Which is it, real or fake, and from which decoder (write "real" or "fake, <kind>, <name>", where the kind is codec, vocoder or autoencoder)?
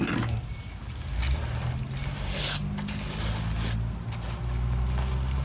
real